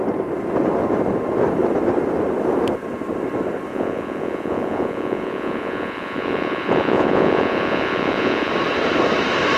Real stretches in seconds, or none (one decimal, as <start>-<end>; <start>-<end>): 0.0-3.7; 8.5-9.6